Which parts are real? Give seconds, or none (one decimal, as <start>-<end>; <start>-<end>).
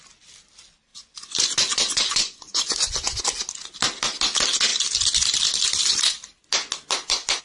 0.0-0.9; 3.2-7.4